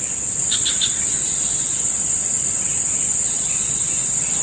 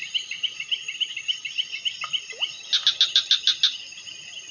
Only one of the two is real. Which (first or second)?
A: second